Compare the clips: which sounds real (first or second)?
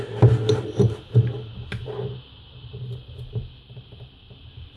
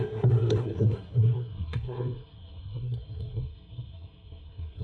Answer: first